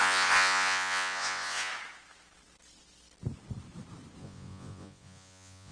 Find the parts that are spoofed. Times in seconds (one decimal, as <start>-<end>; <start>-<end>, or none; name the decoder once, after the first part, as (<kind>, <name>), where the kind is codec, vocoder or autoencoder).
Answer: 0.0-1.7 (vocoder, Vocos); 4.2-5.7